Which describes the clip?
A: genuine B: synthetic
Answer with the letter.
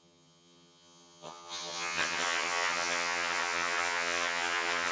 B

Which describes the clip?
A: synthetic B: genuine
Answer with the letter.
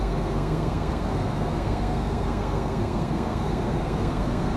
A